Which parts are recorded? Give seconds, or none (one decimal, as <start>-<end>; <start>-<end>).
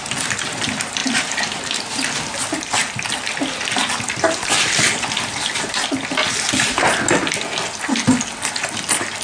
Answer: 0.0-9.2